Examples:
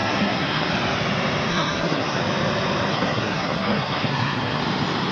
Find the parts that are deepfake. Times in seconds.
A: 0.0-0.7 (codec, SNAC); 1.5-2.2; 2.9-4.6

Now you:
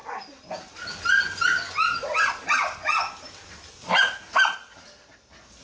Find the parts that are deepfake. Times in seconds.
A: none

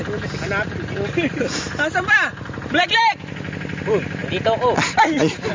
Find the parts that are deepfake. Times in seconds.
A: none

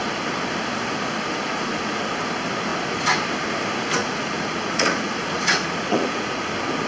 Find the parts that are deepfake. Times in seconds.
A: 4.0-6.4 (vocoder, Vocos)